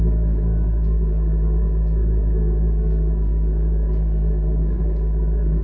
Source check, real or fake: fake